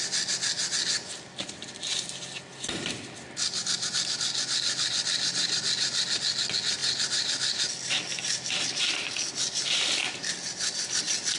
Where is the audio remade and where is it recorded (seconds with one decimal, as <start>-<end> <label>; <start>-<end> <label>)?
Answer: 0.0-11.4 recorded